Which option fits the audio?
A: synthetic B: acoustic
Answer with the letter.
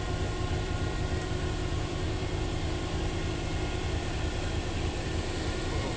A